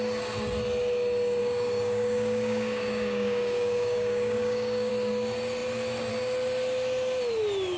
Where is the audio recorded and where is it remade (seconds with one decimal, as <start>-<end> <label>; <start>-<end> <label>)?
0.0-1.4 recorded; 1.4-4.9 remade; 4.9-7.8 recorded